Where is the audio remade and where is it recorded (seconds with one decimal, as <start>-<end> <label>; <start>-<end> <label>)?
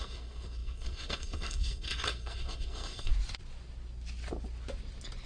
0.0-3.1 remade; 3.1-5.3 recorded